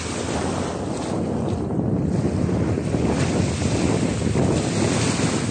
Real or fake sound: real